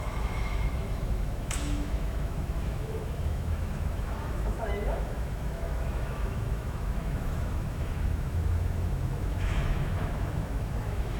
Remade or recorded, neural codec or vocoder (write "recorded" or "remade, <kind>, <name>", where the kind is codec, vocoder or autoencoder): remade, autoencoder, DAC-VAE